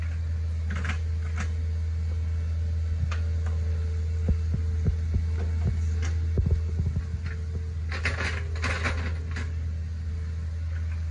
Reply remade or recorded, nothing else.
recorded